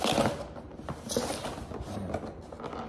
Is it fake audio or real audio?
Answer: real